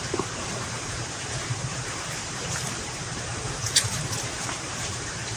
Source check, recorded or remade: remade